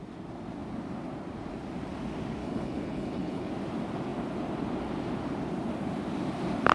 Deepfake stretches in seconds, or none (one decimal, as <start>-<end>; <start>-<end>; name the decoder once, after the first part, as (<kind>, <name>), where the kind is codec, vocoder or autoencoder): 2.4-3.5 (codec, HILCodec)